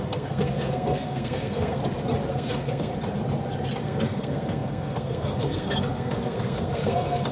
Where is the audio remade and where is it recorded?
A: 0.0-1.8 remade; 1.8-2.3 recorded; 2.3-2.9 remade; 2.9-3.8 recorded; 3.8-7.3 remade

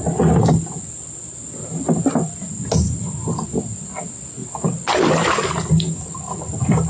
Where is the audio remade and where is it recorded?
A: 0.0-6.9 recorded

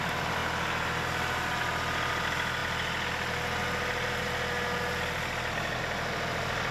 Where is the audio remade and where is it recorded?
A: 0.0-6.7 recorded

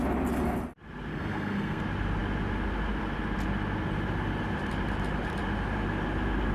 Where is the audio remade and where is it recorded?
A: 0.0-1.1 recorded; 1.1-1.8 remade; 1.8-6.5 recorded

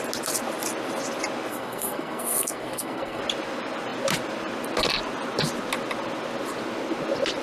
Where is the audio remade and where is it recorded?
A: 0.0-1.5 recorded; 1.5-3.2 remade; 3.2-7.4 recorded

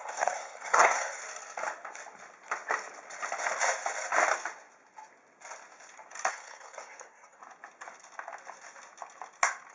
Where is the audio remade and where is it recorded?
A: 0.0-1.2 remade; 1.2-6.3 recorded; 6.3-7.4 remade; 7.4-9.7 recorded